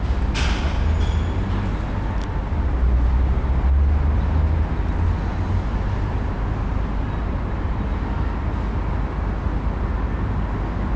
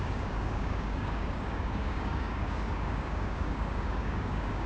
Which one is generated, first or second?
second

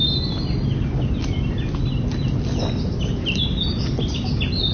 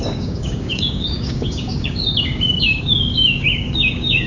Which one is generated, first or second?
second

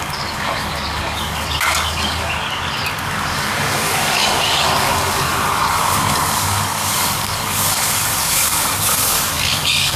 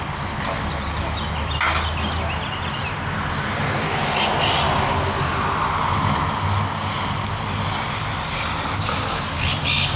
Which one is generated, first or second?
first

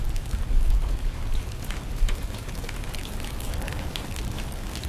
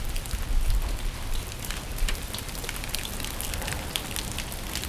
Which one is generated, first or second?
first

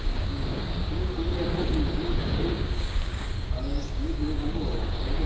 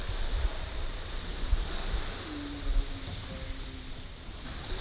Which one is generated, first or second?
first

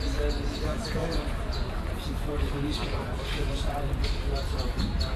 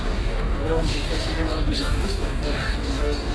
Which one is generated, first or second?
second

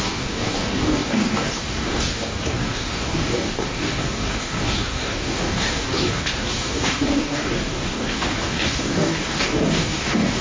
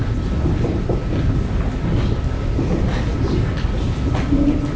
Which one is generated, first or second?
first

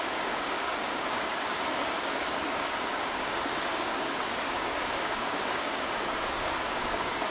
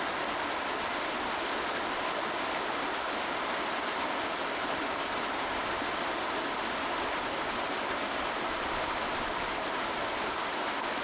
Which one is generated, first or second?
first